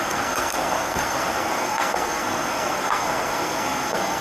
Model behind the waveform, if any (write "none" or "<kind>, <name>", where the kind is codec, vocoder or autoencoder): codec, SNAC